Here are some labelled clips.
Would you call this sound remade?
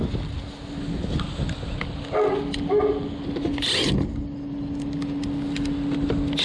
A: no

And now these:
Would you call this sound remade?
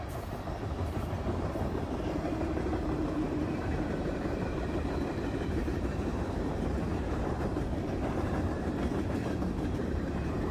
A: yes